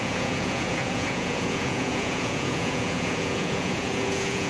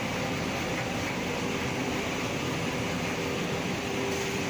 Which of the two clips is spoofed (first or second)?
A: first